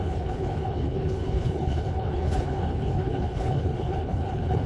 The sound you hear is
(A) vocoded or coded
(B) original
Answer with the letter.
A